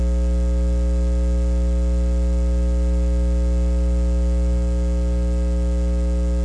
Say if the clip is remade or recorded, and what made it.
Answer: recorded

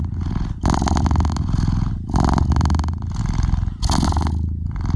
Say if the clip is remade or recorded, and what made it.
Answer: recorded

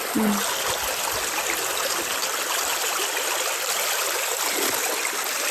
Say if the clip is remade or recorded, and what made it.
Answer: recorded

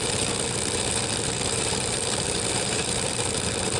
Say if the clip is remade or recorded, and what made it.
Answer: remade, vocoder, BigVGAN v2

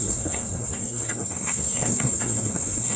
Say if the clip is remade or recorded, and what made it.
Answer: remade, codec, SNAC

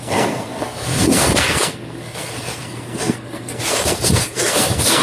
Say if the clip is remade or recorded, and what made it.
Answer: remade, codec, SNAC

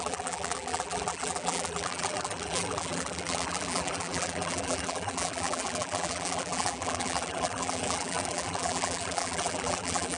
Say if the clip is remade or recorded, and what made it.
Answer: remade, vocoder, BigVGAN v2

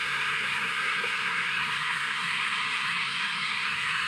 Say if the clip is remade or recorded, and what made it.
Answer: remade, codec, SNAC